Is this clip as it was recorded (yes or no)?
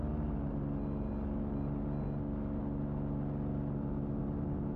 yes